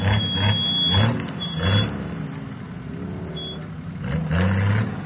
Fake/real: real